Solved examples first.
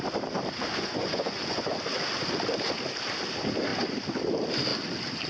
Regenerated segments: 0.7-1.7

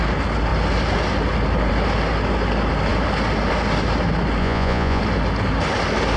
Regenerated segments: 4.4-5.0

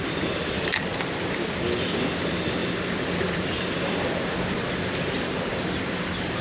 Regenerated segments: none

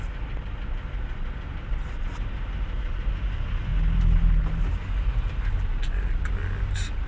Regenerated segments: none

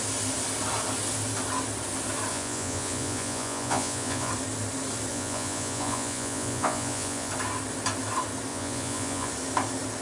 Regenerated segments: 2.3-4.3; 5.1-7.3; 8.5-9.3

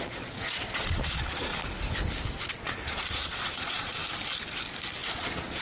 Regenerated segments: 0.0-1.5; 2.5-4.0; 5.1-5.6

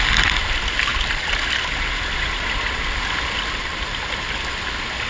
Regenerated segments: none

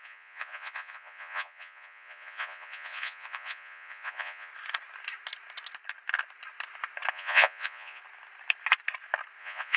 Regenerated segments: 0.0-4.5; 7.1-8.0; 9.4-9.8